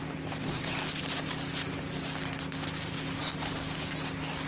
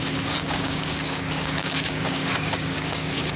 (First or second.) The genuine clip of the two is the first